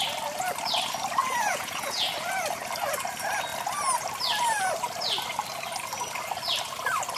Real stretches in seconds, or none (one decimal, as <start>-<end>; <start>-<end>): 0.0-1.2; 2.1-7.2